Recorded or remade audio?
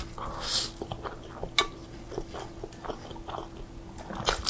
recorded